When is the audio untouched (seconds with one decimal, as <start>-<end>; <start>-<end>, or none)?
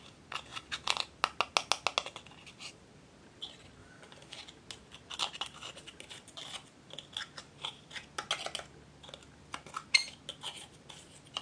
0.0-3.8; 4.4-11.4